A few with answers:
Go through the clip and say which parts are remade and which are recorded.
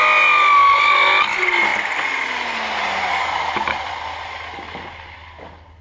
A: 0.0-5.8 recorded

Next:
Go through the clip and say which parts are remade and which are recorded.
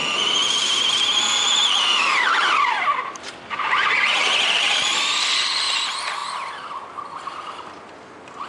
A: 0.0-6.2 recorded; 6.2-8.5 remade